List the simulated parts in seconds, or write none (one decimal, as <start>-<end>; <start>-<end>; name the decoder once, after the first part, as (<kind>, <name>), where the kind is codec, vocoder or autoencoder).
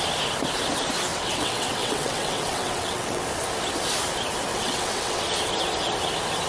1.1-3.2 (vocoder, WaveNeXt); 4.5-5.2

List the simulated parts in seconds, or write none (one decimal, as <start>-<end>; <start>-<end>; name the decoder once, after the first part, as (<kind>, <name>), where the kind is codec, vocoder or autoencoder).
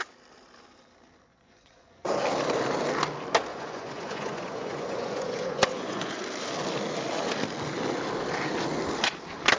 1.3-2.2 (vocoder, Vocos); 3.5-6.1